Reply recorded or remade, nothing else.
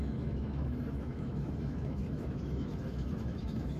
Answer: remade